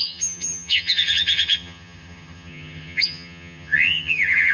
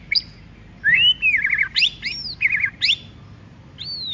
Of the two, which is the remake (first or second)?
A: first